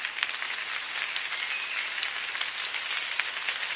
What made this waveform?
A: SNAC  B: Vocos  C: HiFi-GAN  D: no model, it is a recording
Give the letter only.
D